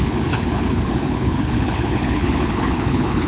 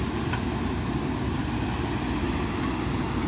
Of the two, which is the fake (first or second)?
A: first